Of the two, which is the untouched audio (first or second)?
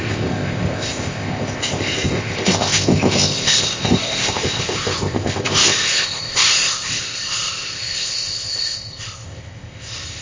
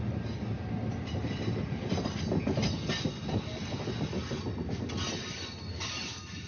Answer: second